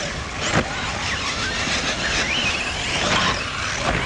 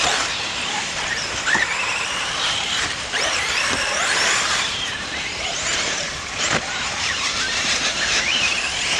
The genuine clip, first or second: first